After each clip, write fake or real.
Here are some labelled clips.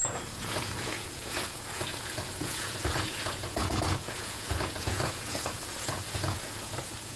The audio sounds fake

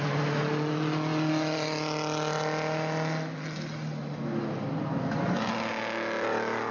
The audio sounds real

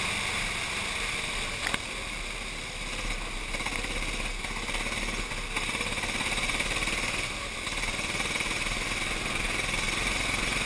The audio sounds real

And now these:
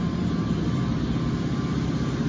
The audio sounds real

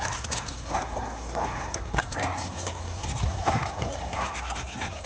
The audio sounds fake